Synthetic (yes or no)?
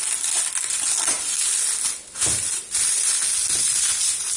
no